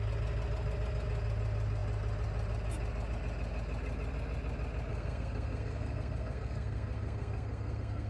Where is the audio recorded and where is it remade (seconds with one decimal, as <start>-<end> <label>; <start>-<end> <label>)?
0.0-4.9 recorded; 4.9-8.1 remade